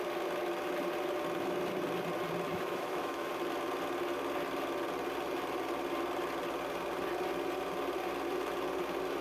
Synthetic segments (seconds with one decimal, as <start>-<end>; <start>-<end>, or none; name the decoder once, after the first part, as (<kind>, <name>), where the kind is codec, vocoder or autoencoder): 2.5-3.3 (autoencoder, DAC-VAE)

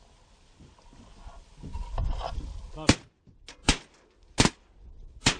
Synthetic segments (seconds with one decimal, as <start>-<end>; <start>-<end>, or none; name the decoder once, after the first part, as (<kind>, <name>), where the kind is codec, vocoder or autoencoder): none

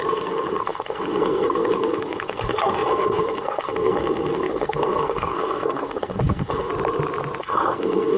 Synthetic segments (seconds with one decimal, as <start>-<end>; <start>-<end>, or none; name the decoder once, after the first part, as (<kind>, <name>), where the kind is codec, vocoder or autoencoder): 0.0-6.7 (codec, SNAC); 7.4-8.2

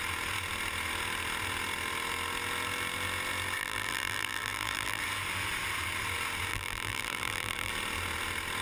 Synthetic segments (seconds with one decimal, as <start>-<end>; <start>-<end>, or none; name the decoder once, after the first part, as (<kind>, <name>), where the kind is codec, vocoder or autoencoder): 3.6-5.0 (vocoder, BigVGAN v2); 6.5-7.7